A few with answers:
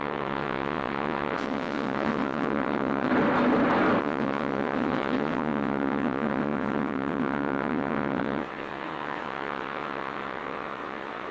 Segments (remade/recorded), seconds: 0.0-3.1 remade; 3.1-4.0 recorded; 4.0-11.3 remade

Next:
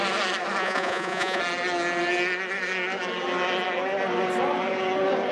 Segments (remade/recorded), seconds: 0.0-0.6 recorded; 0.6-1.4 remade; 1.4-5.3 recorded

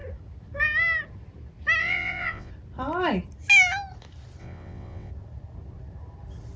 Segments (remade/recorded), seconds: 0.0-1.8 recorded; 1.8-2.5 remade; 2.5-4.4 recorded; 4.4-5.1 remade; 5.1-6.6 recorded

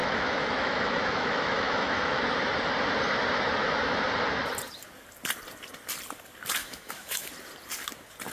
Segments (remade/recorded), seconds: 0.0-2.2 remade; 2.2-6.6 recorded; 6.6-7.3 remade; 7.3-8.3 recorded

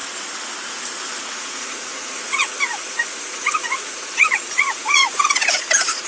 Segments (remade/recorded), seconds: 0.0-1.2 recorded; 1.2-6.1 remade

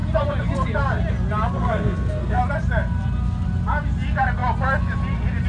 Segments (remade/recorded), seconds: 0.0-1.6 recorded; 1.6-2.4 remade; 2.4-5.5 recorded